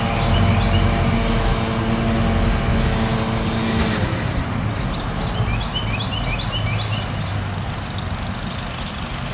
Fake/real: real